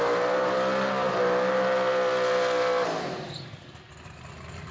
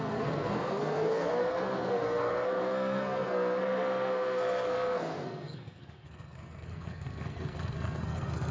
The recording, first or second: first